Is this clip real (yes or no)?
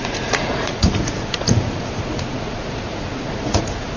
no